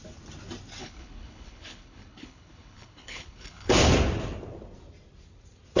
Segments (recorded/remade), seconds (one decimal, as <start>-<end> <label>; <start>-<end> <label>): 0.0-0.8 recorded; 0.8-3.7 remade; 3.7-5.8 recorded